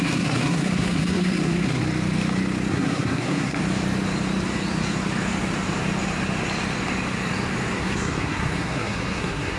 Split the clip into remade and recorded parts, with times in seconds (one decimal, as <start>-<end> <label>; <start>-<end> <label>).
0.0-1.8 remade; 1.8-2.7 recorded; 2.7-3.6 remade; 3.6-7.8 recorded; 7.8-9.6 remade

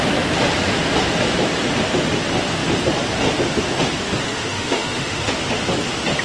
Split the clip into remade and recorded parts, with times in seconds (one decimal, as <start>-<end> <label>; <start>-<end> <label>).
0.0-4.2 recorded; 4.2-5.3 remade; 5.3-6.2 recorded

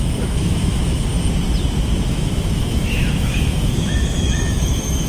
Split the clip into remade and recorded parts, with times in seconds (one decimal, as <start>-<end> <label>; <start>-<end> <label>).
0.0-1.1 remade; 1.1-2.1 recorded; 2.1-5.1 remade

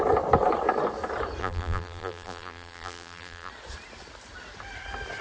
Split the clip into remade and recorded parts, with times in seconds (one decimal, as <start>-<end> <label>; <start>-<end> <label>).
0.0-1.4 recorded; 1.4-3.5 remade; 3.5-5.2 recorded